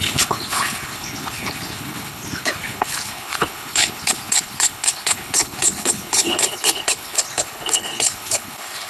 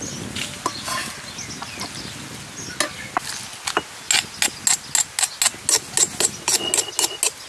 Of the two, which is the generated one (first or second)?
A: first